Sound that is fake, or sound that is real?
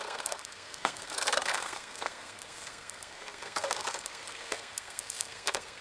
fake